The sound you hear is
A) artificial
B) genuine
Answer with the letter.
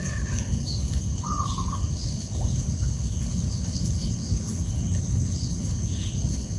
A